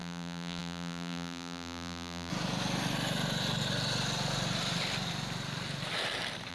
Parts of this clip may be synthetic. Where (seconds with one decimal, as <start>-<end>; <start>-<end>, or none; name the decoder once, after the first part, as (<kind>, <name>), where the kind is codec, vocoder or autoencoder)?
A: 0.0-2.3 (vocoder, BigVGAN v2)